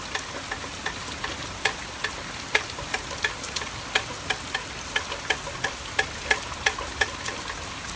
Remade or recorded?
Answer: recorded